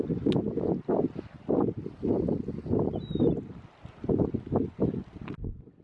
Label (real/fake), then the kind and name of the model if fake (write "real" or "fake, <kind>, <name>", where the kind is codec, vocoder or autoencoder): real